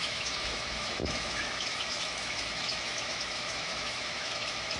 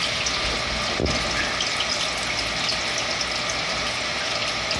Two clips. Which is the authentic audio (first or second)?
second